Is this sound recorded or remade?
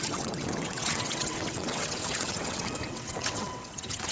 remade